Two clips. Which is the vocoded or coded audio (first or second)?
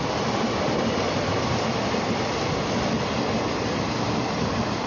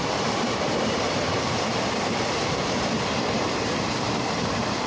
second